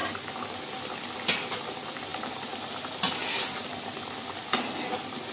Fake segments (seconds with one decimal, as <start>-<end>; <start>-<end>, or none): none